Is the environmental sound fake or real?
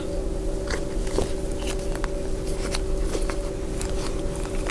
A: real